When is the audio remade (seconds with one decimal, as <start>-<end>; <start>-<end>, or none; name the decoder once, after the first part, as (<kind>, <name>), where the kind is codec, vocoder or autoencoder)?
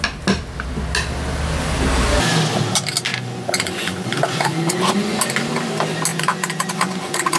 3.1-5.2 (vocoder, Vocos); 6.1-7.4